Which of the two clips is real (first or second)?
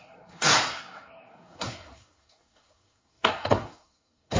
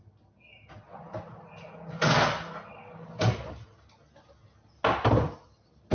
second